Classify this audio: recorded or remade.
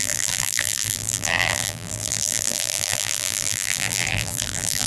remade